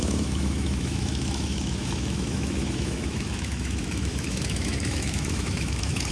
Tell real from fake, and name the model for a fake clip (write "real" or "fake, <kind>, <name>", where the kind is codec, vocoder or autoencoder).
fake, autoencoder, DAC-VAE